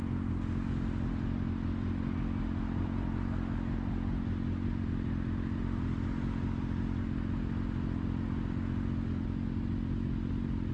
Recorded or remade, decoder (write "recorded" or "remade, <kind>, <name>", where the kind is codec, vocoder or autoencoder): recorded